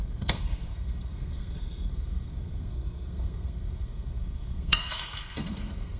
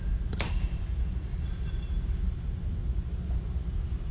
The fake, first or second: first